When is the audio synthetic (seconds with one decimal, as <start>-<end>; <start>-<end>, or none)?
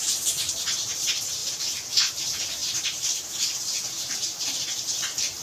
none